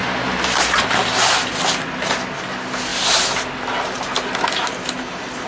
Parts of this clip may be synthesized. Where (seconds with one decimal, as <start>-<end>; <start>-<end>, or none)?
none